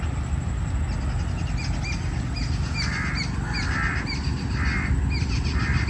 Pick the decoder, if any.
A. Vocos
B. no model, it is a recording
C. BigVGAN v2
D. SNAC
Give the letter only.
B